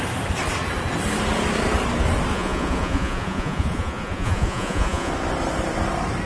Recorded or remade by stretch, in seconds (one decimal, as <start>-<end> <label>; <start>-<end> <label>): 0.0-2.3 recorded; 2.3-5.1 remade; 5.1-6.3 recorded